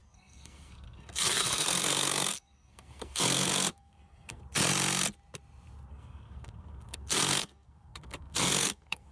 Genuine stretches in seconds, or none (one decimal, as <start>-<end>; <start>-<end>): 4.4-5.9